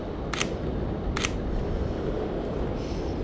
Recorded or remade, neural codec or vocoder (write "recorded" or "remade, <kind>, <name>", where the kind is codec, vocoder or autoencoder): recorded